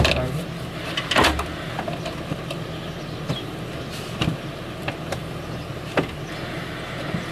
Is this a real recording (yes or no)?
no